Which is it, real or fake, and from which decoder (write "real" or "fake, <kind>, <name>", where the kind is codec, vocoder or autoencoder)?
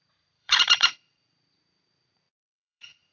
fake, vocoder, Vocos